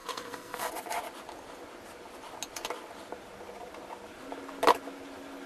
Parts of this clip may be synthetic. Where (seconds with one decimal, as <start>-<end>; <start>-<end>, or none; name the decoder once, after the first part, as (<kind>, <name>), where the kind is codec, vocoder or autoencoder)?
0.0-0.7 (codec, SNAC)